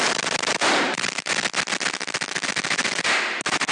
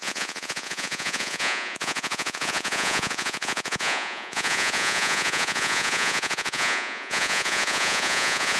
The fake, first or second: second